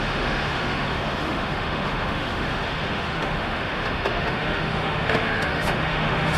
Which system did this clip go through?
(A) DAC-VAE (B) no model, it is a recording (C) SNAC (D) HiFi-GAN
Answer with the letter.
A